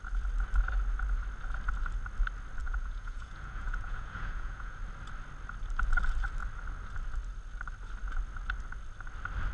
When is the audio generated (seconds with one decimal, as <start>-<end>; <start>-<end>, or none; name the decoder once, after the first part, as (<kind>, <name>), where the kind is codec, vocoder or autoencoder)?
2.6-4.8 (vocoder, Vocos)